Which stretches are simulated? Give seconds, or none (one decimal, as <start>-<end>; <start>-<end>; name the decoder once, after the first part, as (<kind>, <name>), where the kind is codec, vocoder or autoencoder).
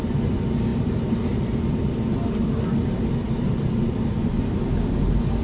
none